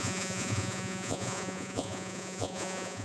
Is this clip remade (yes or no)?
yes